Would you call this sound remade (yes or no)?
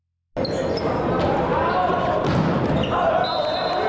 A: no